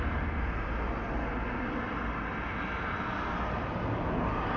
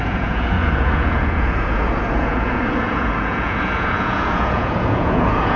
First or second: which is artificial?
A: second